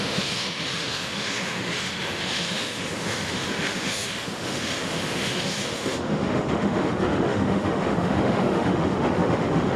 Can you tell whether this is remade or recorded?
remade